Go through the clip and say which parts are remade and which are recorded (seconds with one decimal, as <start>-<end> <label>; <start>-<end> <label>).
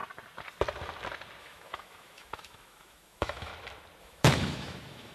0.0-1.4 recorded; 1.4-3.5 remade; 3.5-4.0 recorded; 4.0-5.1 remade